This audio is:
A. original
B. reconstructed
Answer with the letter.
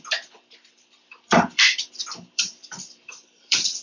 B